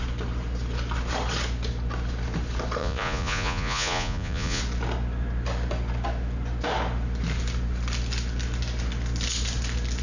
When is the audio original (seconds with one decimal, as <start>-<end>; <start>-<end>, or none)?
0.0-2.8; 4.6-10.0